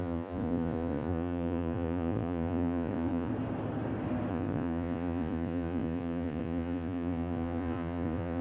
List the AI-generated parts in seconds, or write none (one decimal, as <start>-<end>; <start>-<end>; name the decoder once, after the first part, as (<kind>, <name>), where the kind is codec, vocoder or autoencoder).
0.0-3.3 (vocoder, Vocos); 4.3-8.4